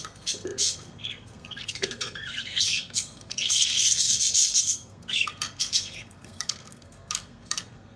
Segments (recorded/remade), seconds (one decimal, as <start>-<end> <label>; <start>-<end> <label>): 0.0-8.0 remade